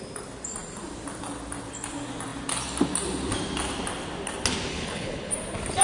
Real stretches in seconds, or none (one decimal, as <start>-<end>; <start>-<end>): 0.0-4.7; 5.3-5.8